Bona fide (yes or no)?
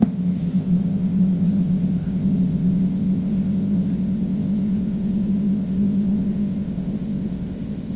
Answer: no